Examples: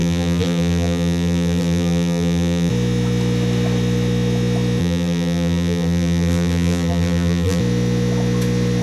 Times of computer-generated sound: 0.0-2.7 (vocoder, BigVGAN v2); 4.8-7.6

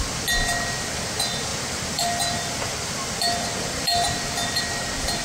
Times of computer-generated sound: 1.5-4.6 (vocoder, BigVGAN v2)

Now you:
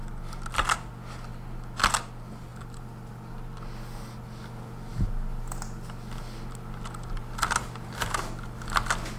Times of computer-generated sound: none